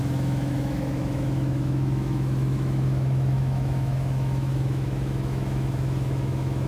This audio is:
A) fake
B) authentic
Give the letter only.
A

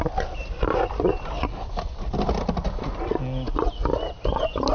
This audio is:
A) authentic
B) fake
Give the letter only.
A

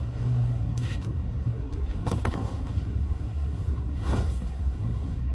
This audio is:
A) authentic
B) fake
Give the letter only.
B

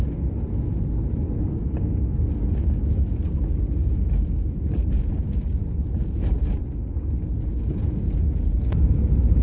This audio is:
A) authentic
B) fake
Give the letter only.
A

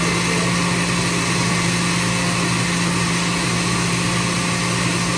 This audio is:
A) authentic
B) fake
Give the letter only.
A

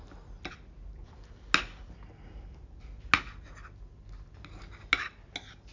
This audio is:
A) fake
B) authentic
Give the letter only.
B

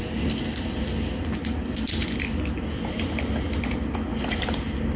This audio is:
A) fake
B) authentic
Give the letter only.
B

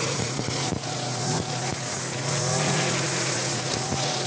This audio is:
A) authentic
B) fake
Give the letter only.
B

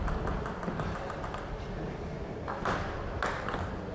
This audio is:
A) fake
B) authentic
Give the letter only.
B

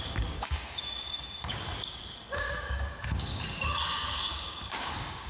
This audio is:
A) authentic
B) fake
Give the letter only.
B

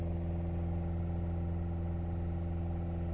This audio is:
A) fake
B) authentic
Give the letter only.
B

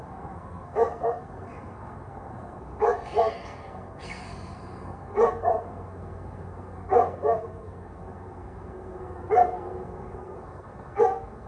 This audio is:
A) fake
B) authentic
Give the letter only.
A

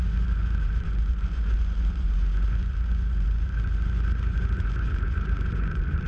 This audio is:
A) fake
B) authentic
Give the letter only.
A